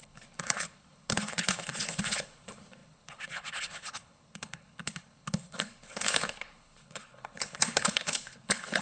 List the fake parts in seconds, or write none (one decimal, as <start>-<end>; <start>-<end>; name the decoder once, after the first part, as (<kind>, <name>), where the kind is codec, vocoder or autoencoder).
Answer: 0.0-8.8 (codec, HILCodec)